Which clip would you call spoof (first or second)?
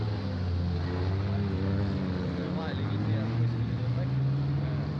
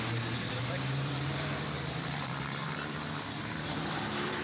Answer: second